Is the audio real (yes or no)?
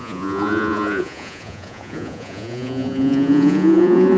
no